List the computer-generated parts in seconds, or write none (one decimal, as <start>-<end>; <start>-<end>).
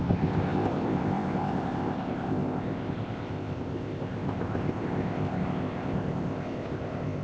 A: 0.0-7.2